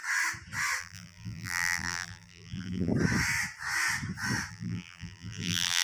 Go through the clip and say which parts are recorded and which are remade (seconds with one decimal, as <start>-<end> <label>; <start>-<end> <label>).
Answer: 0.0-0.8 recorded; 0.8-2.9 remade; 2.9-4.5 recorded; 4.5-5.8 remade